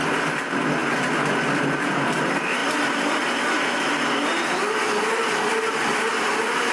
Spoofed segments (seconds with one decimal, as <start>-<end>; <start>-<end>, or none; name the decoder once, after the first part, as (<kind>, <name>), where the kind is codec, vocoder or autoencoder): none